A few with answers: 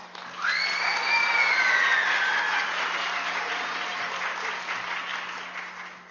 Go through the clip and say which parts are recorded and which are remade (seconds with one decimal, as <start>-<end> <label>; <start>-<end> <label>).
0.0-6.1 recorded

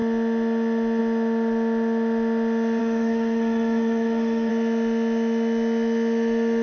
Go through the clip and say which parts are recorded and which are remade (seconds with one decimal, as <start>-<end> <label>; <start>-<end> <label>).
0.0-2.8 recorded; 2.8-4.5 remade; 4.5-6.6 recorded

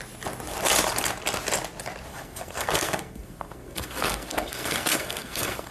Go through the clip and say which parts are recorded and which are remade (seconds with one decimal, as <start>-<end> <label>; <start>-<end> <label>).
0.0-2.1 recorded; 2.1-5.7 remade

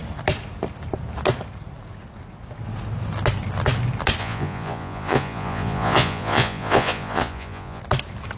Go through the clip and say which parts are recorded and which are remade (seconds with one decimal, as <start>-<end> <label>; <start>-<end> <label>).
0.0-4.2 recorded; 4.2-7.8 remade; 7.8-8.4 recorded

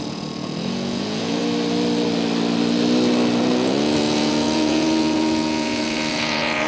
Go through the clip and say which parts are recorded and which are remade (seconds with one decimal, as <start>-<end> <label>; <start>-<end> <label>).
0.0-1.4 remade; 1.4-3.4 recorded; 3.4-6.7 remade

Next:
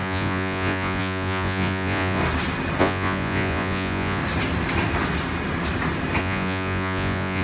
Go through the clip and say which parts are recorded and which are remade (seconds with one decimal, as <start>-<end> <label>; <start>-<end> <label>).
0.0-2.2 remade; 2.2-2.8 recorded; 2.8-4.2 remade; 4.2-6.2 recorded; 6.2-7.4 remade

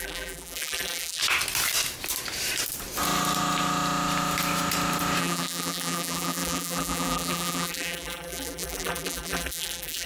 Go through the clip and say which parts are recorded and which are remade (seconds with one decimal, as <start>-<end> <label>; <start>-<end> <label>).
0.0-1.2 remade; 1.2-5.2 recorded; 5.2-10.1 remade